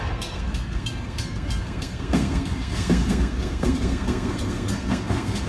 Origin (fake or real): fake